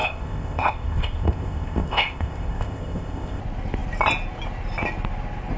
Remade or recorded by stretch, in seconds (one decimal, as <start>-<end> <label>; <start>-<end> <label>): 0.0-3.4 remade; 3.4-5.6 recorded

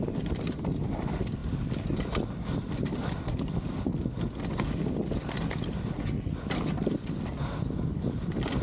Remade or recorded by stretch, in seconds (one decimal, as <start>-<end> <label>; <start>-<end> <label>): 0.0-8.6 recorded